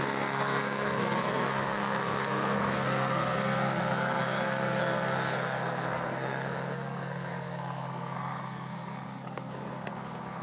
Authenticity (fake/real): fake